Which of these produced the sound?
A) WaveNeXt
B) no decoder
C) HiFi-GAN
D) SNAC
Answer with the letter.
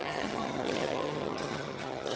C